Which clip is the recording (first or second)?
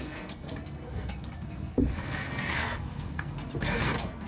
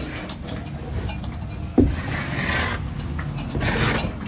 second